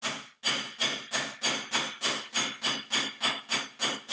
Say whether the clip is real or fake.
real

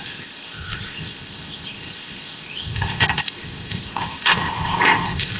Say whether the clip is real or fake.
fake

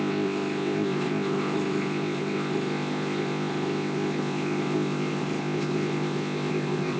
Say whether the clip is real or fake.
fake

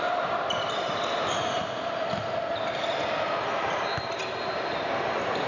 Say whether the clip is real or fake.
real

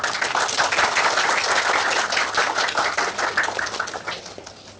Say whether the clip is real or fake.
real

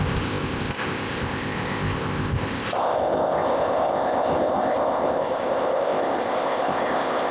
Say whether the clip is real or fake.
fake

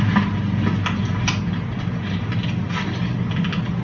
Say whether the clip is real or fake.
real